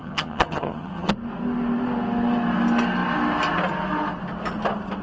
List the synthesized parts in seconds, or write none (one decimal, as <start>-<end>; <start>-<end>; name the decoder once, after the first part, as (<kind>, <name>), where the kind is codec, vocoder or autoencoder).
0.0-1.1 (vocoder, HiFi-GAN)